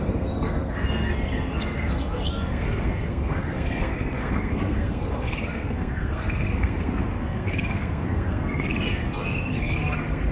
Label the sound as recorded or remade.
remade